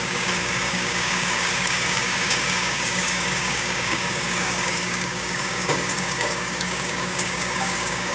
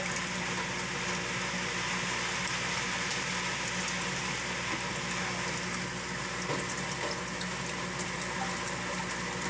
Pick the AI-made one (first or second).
first